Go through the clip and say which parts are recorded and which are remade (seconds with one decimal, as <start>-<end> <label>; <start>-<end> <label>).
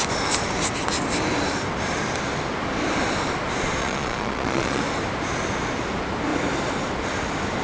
0.0-3.8 recorded; 3.8-4.8 remade; 4.8-7.6 recorded